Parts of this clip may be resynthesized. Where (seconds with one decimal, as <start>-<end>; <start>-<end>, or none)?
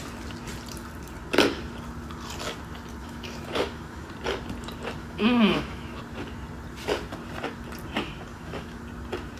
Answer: 3.0-4.1; 5.0-6.0; 8.3-8.8